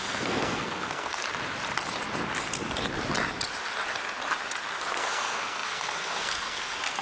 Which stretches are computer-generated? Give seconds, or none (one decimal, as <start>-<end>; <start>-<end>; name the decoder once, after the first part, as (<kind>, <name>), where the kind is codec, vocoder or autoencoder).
0.0-1.2 (codec, SNAC); 4.9-7.0